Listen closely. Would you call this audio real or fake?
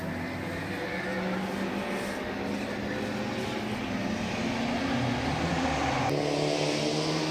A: real